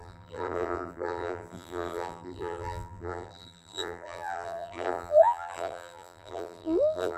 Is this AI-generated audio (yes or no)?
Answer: yes